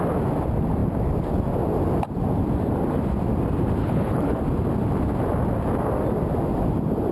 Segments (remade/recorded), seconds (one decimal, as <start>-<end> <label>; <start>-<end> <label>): 0.0-3.8 recorded; 3.8-4.4 remade; 4.4-7.1 recorded